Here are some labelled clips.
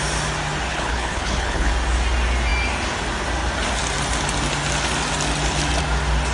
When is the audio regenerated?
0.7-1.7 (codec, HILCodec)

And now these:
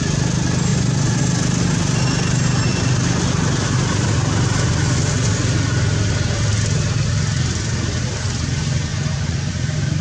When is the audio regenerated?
0.7-1.2 (vocoder, Vocos); 8.9-9.5

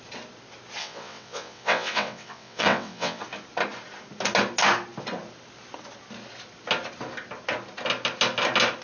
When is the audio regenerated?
0.8-3.2 (vocoder, WaveNeXt)

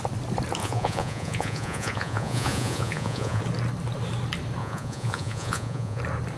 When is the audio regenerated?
0.6-3.4 (vocoder, Vocos); 4.6-6.0

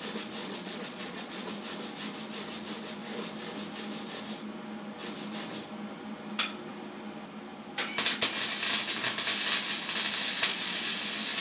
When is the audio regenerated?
0.4-1.5 (vocoder, Vocos); 10.3-11.0